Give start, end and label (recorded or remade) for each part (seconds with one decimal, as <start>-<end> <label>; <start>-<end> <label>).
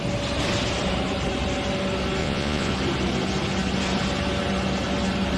0.0-2.2 recorded; 2.2-2.7 remade; 2.7-5.4 recorded